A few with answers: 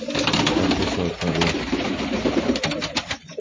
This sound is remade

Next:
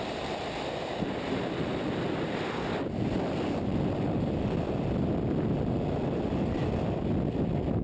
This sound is recorded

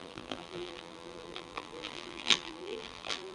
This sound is remade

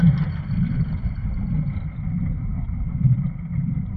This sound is recorded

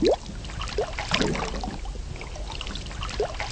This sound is recorded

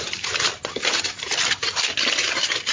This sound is remade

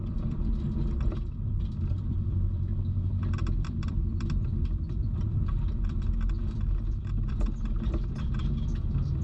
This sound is remade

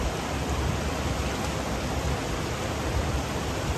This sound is recorded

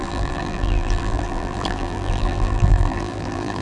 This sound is remade